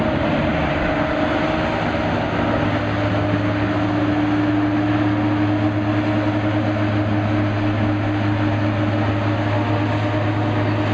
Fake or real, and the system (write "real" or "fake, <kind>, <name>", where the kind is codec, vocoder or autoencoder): real